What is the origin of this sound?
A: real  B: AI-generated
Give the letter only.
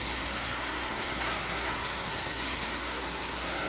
B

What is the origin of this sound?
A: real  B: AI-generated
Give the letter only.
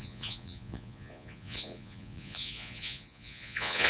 B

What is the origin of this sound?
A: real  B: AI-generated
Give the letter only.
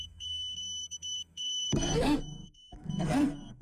B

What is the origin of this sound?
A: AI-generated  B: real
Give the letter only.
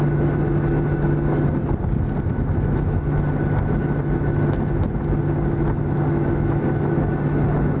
B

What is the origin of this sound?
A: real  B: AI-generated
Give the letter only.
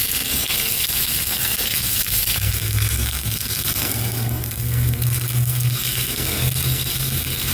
B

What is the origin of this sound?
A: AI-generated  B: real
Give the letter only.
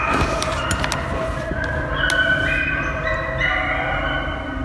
B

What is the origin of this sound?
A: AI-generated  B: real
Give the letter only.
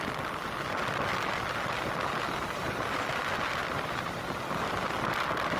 B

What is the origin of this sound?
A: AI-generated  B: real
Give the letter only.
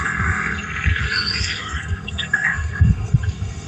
A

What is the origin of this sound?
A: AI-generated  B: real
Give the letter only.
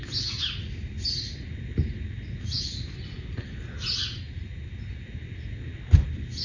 B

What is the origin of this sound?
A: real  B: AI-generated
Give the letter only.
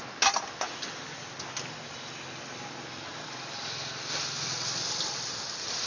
A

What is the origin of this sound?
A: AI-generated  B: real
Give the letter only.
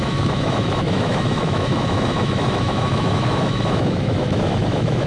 A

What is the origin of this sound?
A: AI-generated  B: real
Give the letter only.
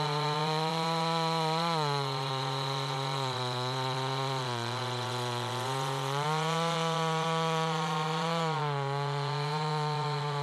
A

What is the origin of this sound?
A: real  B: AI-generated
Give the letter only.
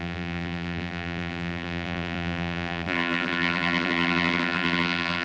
B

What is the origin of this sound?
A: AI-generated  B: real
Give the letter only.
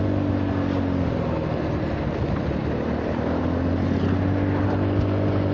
B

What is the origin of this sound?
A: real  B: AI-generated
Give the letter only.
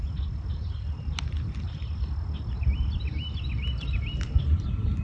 A